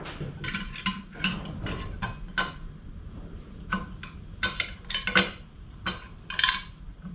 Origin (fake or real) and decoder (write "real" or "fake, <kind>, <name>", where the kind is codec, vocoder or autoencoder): real